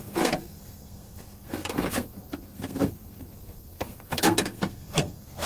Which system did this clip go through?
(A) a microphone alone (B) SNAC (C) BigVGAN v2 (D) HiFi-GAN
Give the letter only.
B